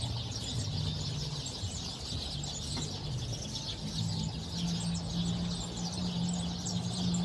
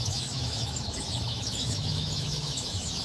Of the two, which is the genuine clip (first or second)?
first